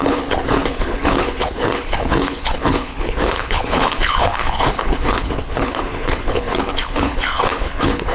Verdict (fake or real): fake